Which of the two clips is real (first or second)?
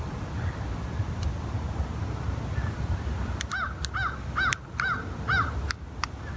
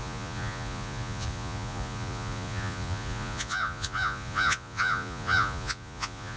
first